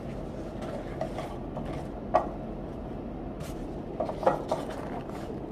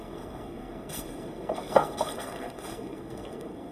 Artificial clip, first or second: second